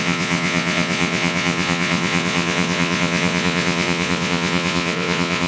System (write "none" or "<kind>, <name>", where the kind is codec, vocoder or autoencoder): vocoder, Vocos